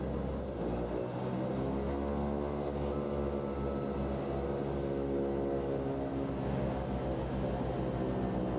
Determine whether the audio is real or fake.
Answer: real